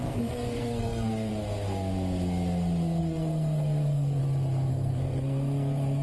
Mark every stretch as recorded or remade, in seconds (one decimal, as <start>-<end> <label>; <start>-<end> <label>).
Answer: 0.0-1.3 remade; 1.3-3.0 recorded; 3.0-4.2 remade; 4.2-4.7 recorded; 4.7-6.0 remade